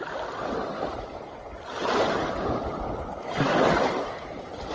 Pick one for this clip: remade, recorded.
recorded